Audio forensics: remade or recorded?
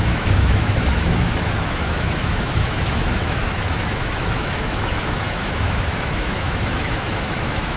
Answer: remade